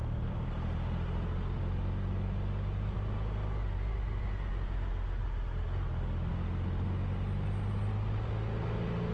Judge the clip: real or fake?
real